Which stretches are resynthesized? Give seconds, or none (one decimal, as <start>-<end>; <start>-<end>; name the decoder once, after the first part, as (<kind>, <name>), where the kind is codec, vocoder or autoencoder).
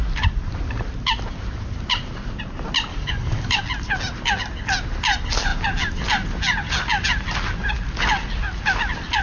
2.9-3.6 (codec, DAC)